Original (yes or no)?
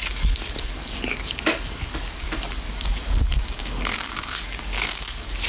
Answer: no